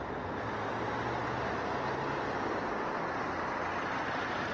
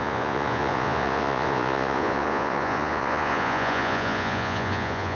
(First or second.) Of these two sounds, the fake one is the second